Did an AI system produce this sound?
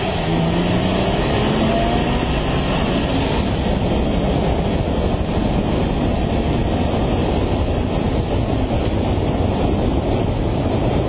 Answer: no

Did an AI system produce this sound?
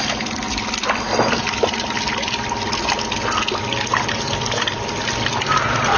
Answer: no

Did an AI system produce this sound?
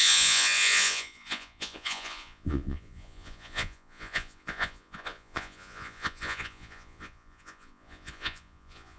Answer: yes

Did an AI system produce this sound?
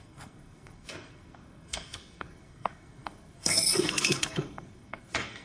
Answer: yes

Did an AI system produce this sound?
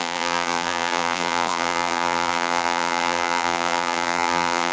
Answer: yes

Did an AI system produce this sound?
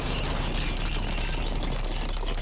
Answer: no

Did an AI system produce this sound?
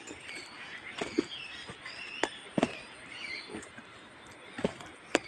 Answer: no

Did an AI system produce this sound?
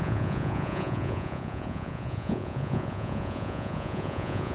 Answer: yes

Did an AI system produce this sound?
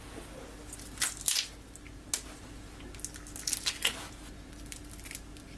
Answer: no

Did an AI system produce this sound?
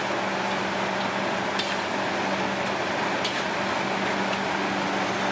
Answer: no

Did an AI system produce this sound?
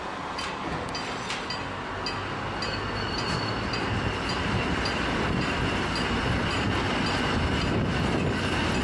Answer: no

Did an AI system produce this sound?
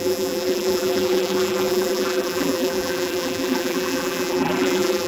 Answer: yes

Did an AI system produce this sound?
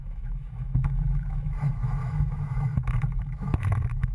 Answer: yes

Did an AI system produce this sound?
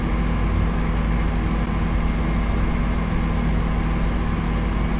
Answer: no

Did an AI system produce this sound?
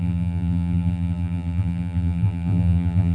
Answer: yes